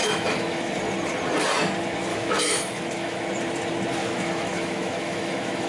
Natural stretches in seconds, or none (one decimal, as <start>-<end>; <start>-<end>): 0.8-2.1; 3.2-4.0

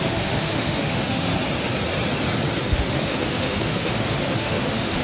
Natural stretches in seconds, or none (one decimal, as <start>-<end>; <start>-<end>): 1.3-2.6

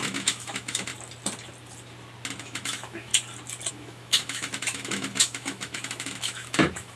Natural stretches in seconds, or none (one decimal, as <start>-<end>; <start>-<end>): 0.9-2.4; 3.1-3.7

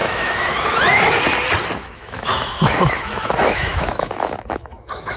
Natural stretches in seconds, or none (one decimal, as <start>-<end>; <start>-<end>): 1.0-1.8

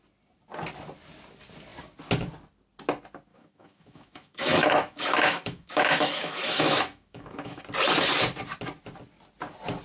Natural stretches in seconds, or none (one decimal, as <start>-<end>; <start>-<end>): 0.0-3.3; 7.6-9.8

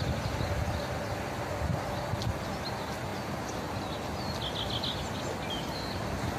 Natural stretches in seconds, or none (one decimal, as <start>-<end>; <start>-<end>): 0.0-6.4